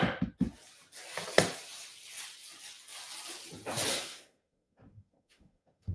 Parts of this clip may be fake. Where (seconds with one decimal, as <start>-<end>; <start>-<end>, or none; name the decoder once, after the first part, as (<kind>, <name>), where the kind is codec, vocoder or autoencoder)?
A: 3.9-5.9 (codec, SNAC)